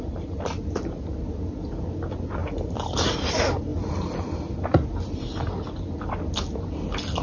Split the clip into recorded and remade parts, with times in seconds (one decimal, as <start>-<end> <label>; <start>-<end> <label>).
0.0-2.4 recorded; 2.4-3.1 remade; 3.1-3.7 recorded; 3.7-4.2 remade; 4.2-7.2 recorded